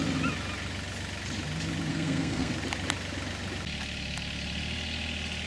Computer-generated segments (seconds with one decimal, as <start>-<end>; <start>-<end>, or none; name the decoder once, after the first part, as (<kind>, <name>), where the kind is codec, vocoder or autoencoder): 1.9-2.5 (codec, SNAC)